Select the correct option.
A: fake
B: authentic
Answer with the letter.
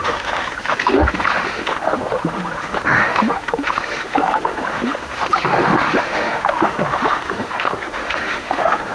A